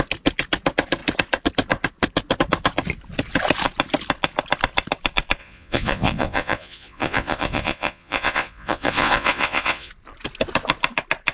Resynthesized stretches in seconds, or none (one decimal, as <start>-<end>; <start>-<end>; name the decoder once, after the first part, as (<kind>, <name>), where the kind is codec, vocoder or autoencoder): 5.4-9.9 (vocoder, Vocos)